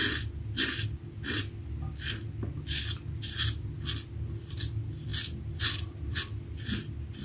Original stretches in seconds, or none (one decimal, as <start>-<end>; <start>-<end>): 0.0-7.2